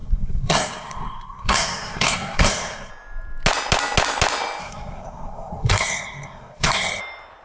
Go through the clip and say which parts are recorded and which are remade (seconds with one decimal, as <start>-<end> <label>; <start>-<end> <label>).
0.0-2.9 remade; 2.9-4.6 recorded; 4.6-7.0 remade; 7.0-7.4 recorded